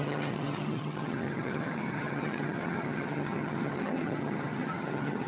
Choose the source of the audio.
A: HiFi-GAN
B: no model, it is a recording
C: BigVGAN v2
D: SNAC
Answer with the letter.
A